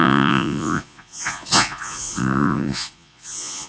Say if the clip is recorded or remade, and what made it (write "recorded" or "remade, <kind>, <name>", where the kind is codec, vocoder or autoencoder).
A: remade, vocoder, Vocos